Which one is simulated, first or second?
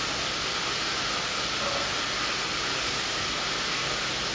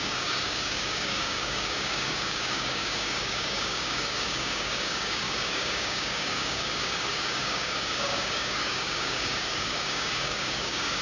second